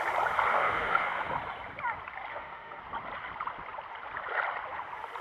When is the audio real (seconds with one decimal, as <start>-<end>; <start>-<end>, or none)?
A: 0.0-0.5; 1.3-2.3; 2.8-5.2